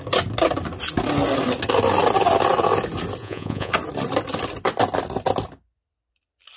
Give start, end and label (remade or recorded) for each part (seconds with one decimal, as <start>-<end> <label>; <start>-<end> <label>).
0.0-3.2 recorded; 3.2-3.7 remade; 3.7-6.6 recorded

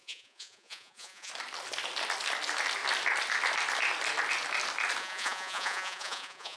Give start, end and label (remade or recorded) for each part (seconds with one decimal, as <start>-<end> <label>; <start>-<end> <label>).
0.0-1.3 remade; 1.3-5.0 recorded; 5.0-6.6 remade